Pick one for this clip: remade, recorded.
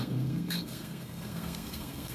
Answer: remade